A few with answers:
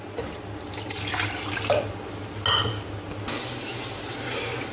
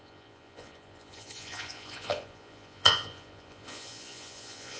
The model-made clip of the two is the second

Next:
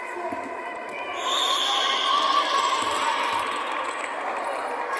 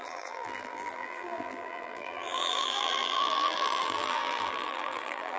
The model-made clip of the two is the second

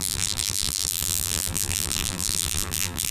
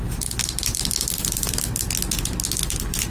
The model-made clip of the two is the first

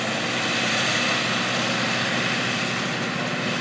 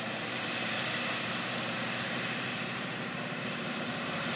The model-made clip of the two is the second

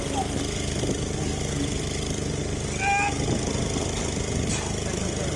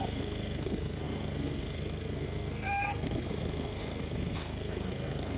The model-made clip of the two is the second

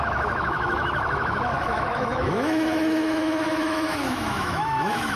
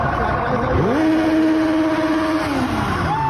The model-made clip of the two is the first